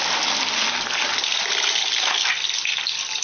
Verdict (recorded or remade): recorded